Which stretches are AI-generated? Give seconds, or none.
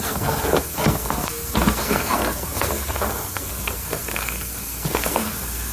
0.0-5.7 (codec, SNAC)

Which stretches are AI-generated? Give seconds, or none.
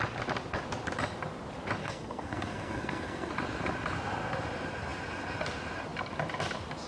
1.8-3.3 (codec, SNAC)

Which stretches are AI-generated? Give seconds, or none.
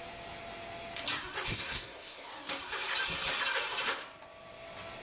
1.5-2.3 (codec, SNAC)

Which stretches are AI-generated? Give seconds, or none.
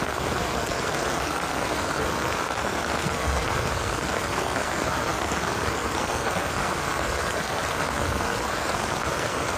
0.0-9.6 (codec, SNAC)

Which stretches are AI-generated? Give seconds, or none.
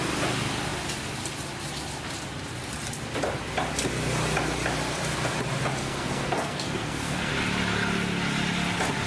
5.8-7.3 (codec, SNAC)